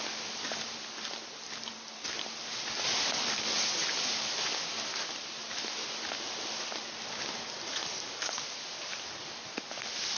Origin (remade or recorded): recorded